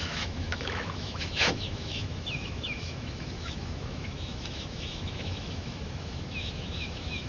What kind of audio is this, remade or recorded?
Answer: remade